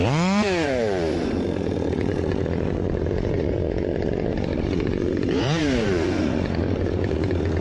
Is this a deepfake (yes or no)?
yes